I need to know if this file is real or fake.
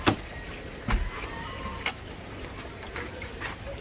real